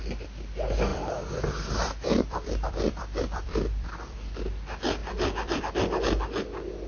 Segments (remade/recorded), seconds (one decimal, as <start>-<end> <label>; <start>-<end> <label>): 0.0-0.9 recorded; 0.9-4.3 remade; 4.3-5.0 recorded; 5.0-5.6 remade; 5.6-6.9 recorded